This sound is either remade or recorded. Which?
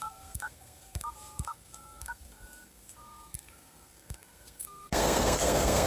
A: remade